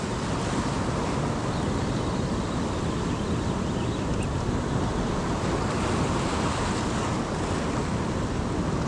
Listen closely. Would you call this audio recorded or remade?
recorded